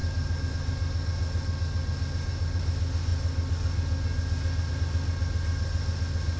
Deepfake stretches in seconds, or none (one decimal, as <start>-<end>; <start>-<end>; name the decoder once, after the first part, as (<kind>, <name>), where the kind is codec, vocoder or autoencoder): none